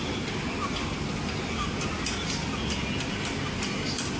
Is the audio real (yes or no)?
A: yes